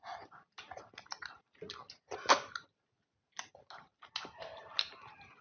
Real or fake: real